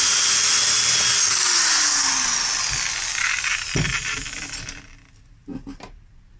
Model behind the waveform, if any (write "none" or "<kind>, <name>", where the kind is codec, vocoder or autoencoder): none